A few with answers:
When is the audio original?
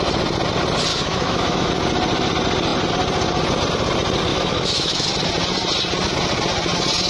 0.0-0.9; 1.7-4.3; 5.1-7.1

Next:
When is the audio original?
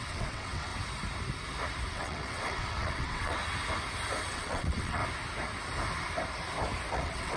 0.7-1.9; 3.4-4.3; 5.0-6.9